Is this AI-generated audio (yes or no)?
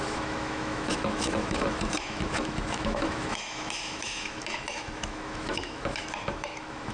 yes